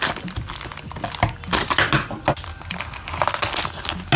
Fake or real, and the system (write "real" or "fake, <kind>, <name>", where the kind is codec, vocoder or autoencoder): real